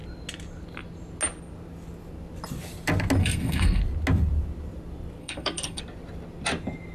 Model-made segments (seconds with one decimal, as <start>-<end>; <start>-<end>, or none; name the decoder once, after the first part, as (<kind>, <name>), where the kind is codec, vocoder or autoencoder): 3.2-3.8 (codec, SNAC); 5.2-5.8